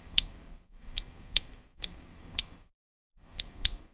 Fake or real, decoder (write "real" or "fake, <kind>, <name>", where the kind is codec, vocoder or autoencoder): fake, codec, SNAC